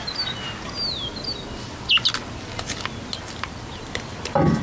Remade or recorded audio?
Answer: recorded